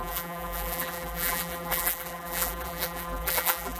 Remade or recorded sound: remade